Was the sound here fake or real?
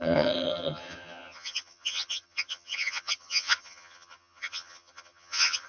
fake